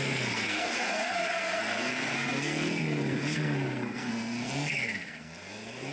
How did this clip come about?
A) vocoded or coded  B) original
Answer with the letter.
A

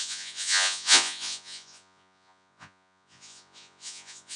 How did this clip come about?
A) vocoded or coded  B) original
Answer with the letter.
A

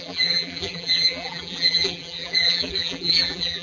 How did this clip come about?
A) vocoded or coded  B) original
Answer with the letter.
A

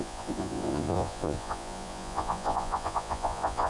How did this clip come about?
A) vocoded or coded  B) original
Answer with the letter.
A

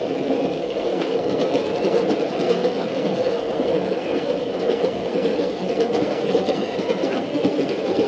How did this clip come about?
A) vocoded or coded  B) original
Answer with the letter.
A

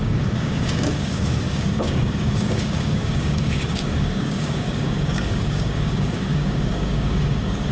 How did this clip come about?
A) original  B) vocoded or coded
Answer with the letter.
B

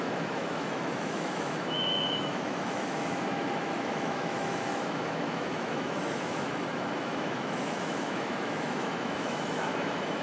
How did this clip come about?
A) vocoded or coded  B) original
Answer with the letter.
A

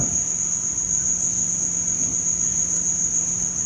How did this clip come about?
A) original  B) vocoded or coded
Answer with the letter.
A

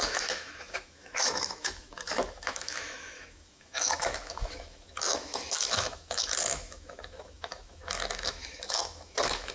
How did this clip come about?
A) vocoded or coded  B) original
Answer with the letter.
A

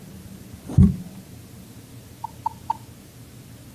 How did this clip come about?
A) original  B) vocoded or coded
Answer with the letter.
B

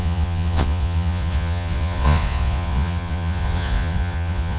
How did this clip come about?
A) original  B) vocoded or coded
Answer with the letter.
B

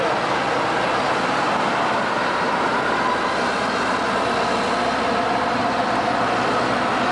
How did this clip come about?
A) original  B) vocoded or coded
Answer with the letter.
A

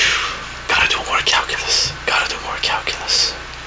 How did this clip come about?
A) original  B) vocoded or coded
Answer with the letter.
A